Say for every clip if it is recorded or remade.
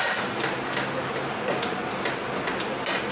recorded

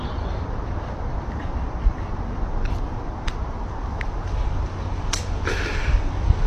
recorded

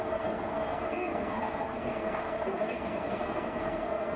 remade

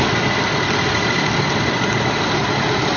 recorded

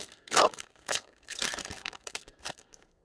remade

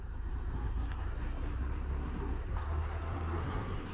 remade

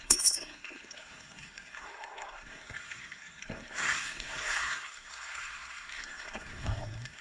remade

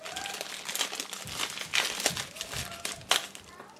recorded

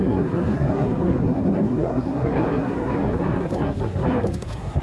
remade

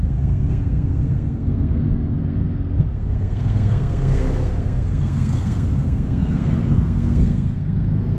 remade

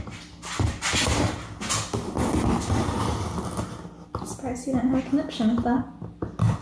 recorded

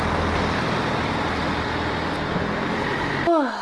recorded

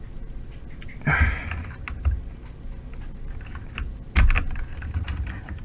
recorded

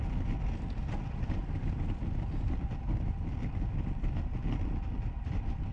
recorded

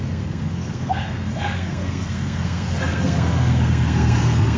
remade